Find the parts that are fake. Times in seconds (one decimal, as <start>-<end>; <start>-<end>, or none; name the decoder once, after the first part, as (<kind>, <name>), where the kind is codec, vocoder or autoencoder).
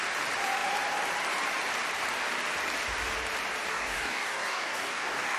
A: 3.7-5.4 (codec, DAC)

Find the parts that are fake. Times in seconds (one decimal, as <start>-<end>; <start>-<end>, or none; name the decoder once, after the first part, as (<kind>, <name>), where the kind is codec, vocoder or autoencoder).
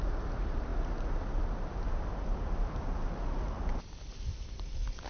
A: none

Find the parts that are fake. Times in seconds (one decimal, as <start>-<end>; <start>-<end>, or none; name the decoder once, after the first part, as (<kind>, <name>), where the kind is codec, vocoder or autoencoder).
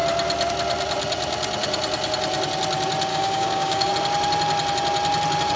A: 3.1-3.9 (codec, DAC)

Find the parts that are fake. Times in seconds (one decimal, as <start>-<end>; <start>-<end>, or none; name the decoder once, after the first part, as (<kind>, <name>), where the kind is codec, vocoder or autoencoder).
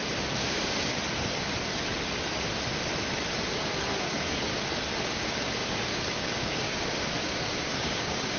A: 4.1-4.5 (codec, DAC); 5.0-8.4